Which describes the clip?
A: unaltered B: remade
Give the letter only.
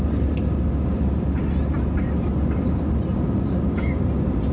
A